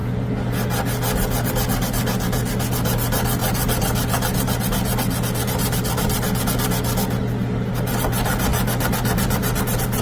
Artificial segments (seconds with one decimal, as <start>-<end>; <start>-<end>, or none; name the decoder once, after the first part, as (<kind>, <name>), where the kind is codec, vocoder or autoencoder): none

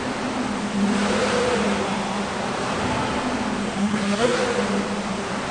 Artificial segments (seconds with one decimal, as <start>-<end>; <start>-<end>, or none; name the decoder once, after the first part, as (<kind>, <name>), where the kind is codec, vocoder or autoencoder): 3.8-4.4 (codec, SNAC)

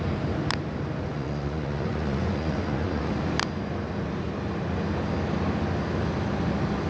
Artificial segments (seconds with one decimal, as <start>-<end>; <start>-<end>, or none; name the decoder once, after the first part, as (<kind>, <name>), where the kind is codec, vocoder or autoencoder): 1.1-3.1 (vocoder, Vocos)

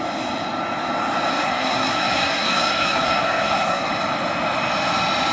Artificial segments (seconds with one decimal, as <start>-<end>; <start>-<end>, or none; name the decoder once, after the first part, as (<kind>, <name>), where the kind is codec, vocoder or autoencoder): 1.3-3.9 (codec, SNAC)